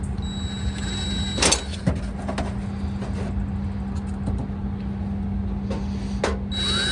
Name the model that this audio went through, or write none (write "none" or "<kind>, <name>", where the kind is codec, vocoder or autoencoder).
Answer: none